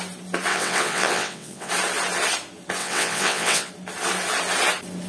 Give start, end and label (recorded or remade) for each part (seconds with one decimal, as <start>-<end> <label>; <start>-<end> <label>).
0.0-0.5 recorded; 0.5-1.7 remade; 1.7-2.8 recorded; 2.8-3.7 remade; 3.7-5.1 recorded